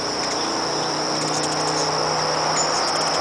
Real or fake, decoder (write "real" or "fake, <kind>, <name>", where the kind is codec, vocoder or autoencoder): real